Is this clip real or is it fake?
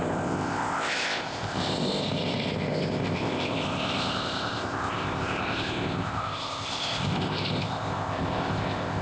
fake